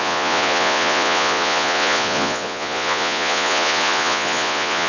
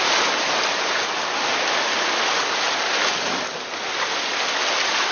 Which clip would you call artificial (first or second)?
first